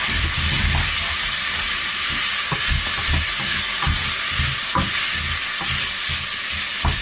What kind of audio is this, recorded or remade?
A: recorded